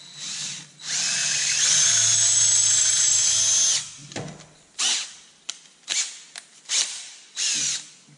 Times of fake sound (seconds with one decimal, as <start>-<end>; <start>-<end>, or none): 1.2-2.4